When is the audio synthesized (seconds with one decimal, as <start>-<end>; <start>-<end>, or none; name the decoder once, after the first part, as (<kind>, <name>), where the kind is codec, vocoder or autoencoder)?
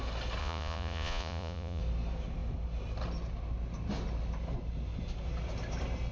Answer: 0.4-1.8 (vocoder, Vocos)